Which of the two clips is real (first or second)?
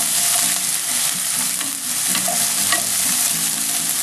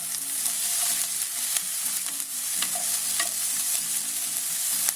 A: first